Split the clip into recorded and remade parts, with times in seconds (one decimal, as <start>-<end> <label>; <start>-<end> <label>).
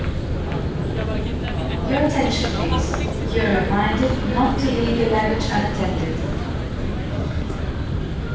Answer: 0.0-7.1 recorded; 7.1-7.6 remade; 7.6-8.3 recorded